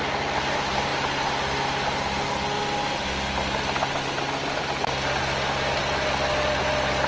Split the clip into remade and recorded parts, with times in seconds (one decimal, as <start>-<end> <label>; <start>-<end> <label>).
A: 0.0-7.1 recorded